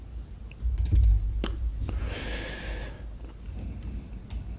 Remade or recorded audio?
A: recorded